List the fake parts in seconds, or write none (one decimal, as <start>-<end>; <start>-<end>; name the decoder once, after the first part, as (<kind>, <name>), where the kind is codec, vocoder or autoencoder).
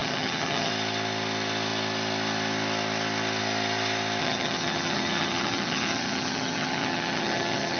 0.0-0.7 (vocoder, HiFi-GAN); 4.2-7.8